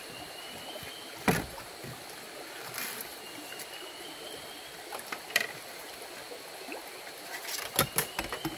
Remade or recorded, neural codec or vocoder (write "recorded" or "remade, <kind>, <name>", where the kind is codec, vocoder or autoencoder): recorded